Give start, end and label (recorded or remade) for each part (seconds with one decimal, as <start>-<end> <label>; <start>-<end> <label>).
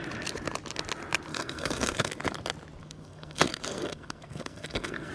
0.0-1.3 recorded; 1.3-2.1 remade; 2.1-2.8 recorded; 2.8-5.1 remade